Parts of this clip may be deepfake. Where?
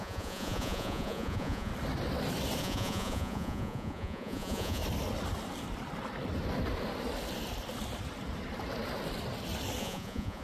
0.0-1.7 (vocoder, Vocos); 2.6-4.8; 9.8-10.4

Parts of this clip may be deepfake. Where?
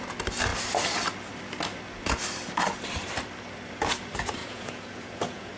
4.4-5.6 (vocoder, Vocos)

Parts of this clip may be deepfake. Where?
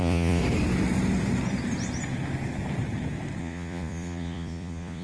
0.0-0.4 (vocoder, Vocos); 3.4-5.0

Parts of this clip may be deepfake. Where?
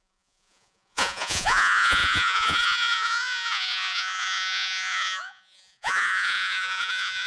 0.0-7.3 (vocoder, Vocos)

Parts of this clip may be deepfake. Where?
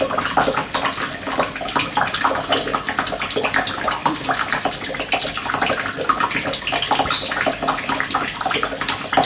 none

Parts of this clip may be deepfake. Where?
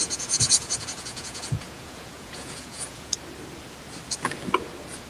0.0-3.1 (vocoder, Vocos)